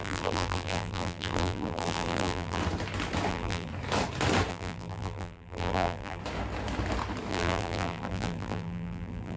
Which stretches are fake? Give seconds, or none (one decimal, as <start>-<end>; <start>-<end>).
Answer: 0.0-2.6; 3.3-3.7; 4.5-6.2; 7.3-9.4